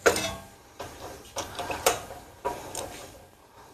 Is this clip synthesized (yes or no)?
yes